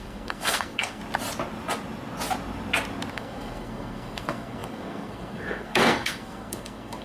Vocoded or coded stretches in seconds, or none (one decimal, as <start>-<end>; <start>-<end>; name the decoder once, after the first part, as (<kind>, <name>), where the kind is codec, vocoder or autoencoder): 0.0-1.0 (codec, SNAC); 3.1-7.0